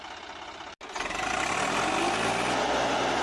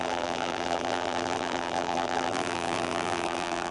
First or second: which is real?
first